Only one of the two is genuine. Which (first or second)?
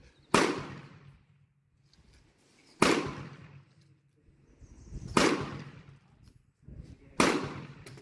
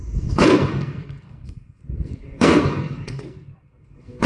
first